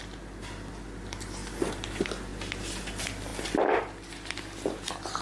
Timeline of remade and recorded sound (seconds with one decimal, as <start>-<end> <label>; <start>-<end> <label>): 0.0-5.2 recorded